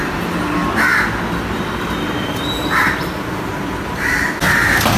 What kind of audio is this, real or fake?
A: real